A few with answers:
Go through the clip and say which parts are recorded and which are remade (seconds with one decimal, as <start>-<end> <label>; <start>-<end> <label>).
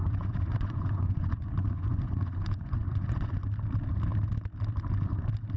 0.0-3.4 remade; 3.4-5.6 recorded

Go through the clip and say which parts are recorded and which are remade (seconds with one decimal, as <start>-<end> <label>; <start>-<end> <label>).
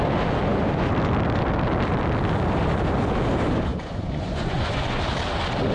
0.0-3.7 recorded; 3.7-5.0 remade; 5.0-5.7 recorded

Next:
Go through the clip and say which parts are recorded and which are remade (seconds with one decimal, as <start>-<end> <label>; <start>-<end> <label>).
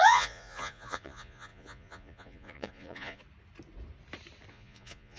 0.0-3.2 remade; 3.2-4.5 recorded; 4.5-5.2 remade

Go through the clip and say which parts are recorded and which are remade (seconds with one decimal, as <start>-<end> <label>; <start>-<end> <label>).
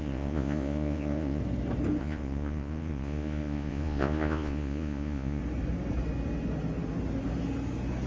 0.0-1.4 remade; 1.4-2.0 recorded; 2.0-5.4 remade; 5.4-8.1 recorded